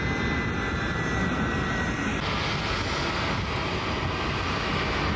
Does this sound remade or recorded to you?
recorded